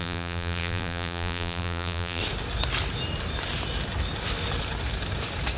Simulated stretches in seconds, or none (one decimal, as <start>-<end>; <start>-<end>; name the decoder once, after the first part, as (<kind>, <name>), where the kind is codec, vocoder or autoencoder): 0.0-2.2 (vocoder, BigVGAN v2)